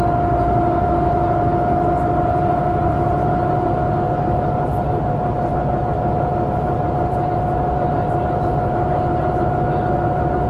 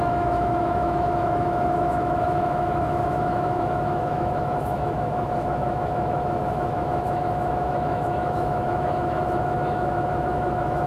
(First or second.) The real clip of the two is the first